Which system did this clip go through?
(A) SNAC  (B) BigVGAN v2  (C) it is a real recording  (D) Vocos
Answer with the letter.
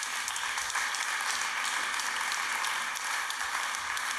C